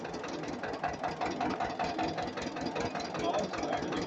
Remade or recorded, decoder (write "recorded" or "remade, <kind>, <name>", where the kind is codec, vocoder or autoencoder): recorded